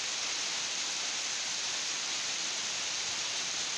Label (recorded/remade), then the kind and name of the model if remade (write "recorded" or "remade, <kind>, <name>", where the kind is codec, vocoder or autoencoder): recorded